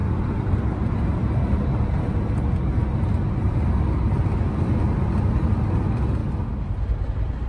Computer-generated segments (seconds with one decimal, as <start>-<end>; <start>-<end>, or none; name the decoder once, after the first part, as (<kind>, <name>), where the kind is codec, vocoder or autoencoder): none